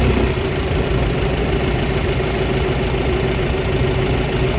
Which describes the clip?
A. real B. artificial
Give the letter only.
A